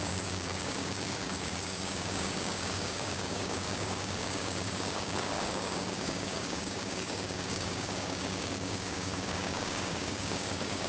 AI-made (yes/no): yes